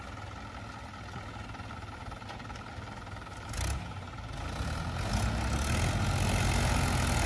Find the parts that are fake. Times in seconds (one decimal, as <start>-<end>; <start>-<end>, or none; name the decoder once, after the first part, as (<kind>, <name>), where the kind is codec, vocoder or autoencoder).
none